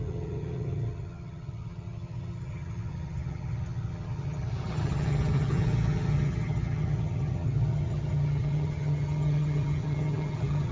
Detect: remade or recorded remade